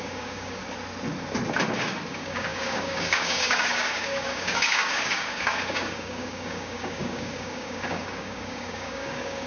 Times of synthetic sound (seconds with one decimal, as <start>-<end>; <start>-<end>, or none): 0.0-0.6; 2.1-9.5